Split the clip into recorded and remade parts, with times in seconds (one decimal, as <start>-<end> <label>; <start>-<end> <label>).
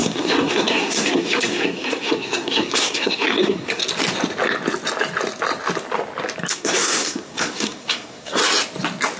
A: 0.0-3.8 remade; 3.8-6.5 recorded; 6.5-8.4 remade; 8.4-9.2 recorded